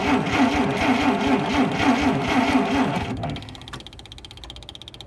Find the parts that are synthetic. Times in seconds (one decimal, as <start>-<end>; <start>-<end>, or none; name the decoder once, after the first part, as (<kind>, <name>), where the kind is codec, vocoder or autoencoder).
none